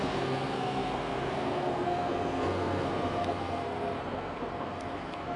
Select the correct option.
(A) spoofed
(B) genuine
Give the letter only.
A